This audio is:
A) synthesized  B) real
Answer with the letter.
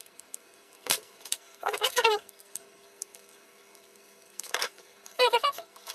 A